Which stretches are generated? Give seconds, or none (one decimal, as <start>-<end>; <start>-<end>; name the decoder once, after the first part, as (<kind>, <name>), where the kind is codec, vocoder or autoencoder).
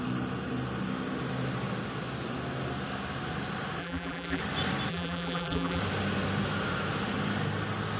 3.8-4.4 (vocoder, BigVGAN v2); 4.9-5.8